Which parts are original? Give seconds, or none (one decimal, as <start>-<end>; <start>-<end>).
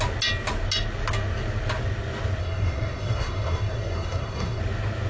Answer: 0.0-2.4; 4.6-5.1